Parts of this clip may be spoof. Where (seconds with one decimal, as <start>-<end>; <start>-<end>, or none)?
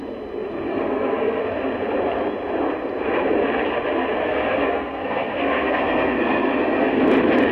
0.7-1.4; 4.2-7.0